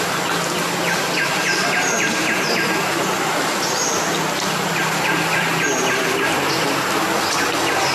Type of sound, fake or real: real